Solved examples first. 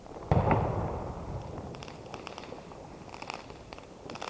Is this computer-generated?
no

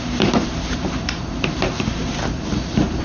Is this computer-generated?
yes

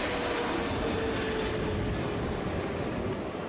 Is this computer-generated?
no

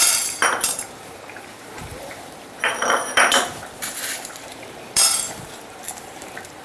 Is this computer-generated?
yes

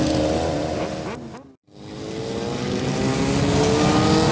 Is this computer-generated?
no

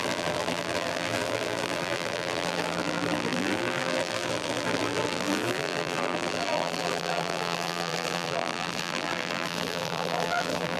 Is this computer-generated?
yes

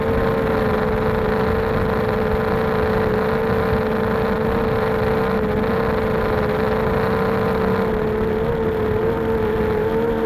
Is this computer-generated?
no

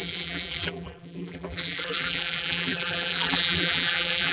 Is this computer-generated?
yes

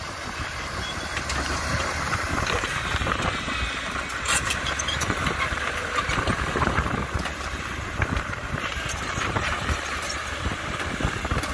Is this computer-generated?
yes